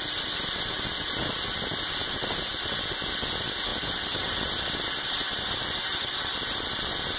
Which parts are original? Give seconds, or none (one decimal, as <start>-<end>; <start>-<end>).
0.0-7.2